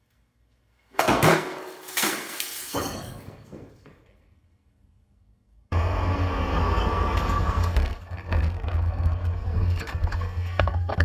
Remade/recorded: remade